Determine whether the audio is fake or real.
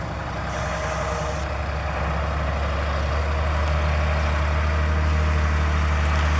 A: real